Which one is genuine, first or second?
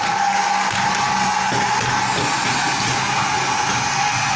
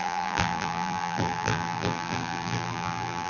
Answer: first